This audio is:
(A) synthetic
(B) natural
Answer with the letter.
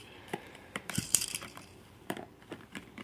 A